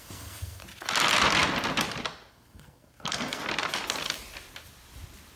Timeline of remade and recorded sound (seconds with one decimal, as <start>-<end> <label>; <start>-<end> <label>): 0.0-0.6 remade; 0.6-2.3 recorded; 2.3-3.4 remade; 3.4-5.4 recorded